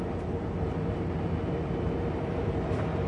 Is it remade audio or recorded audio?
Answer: recorded